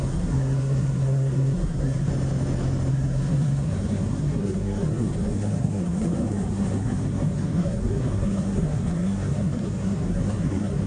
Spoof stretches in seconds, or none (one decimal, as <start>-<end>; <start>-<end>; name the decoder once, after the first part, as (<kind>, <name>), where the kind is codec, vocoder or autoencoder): 0.0-2.1 (codec, SNAC); 2.9-10.9